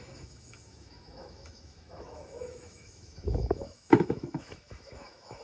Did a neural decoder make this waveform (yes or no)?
yes